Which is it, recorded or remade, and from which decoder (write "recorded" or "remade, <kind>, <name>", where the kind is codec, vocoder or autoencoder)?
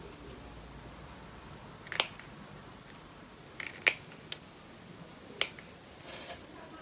recorded